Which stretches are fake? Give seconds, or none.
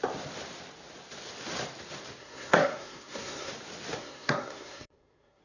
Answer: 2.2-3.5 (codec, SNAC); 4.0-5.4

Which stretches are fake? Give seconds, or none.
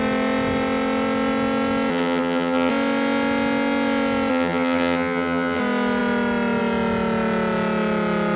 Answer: 1.9-2.7 (vocoder, HiFi-GAN); 4.3-5.6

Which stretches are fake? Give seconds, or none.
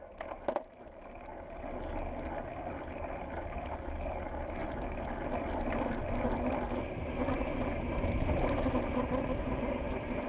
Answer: none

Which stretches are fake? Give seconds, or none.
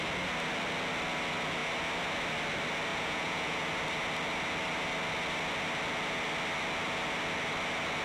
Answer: 2.9-3.7 (vocoder, Vocos)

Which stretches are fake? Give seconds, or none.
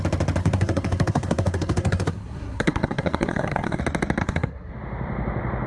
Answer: 0.4-3.8 (codec, SNAC); 4.2-4.7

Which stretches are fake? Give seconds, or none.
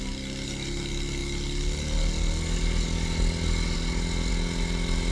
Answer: none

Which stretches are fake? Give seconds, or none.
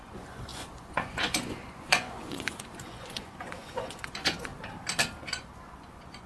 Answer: 0.0-4.5 (vocoder, Vocos); 5.2-6.3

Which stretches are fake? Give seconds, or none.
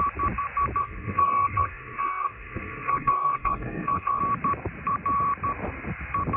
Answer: 0.8-4.2 (codec, SNAC)